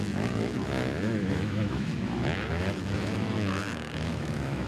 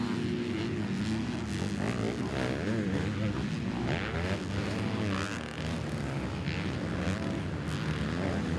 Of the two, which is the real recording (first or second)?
second